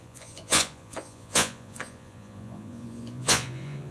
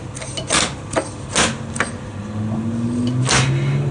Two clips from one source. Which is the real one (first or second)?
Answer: second